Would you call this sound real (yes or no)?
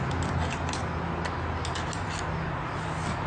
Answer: yes